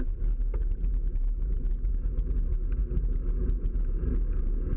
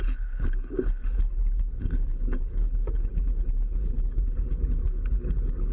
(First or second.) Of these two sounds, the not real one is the second